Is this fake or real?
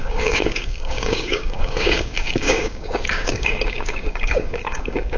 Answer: fake